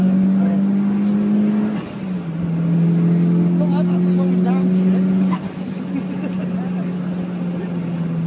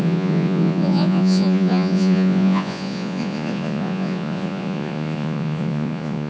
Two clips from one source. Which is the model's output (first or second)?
second